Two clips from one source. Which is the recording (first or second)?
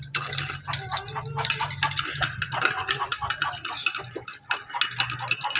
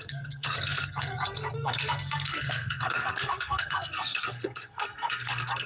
first